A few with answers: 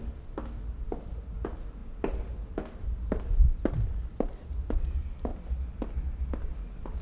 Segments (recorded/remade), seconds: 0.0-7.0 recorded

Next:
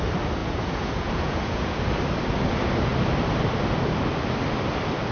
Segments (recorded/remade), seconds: 0.0-0.4 recorded; 0.4-1.8 remade; 1.8-5.1 recorded

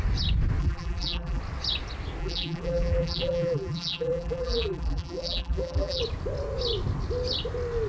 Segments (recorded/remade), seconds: 0.0-0.6 recorded; 0.6-1.4 remade; 1.4-2.2 recorded; 2.2-6.0 remade; 6.0-7.9 recorded

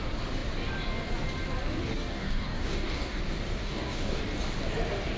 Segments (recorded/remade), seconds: 0.0-1.9 recorded; 1.9-3.2 remade; 3.2-3.6 recorded; 3.6-4.2 remade; 4.2-5.2 recorded

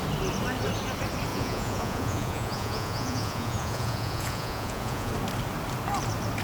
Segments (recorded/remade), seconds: 0.0-1.3 recorded; 1.3-5.1 remade; 5.1-6.4 recorded